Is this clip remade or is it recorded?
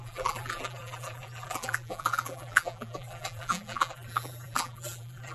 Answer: remade